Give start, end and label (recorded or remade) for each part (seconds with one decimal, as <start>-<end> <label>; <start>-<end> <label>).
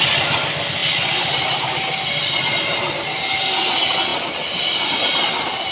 0.0-5.7 recorded